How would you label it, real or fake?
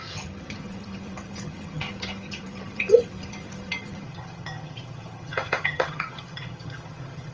fake